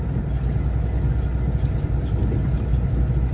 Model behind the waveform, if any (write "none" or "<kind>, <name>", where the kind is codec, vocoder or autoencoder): none